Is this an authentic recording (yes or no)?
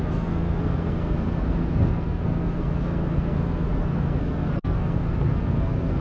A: no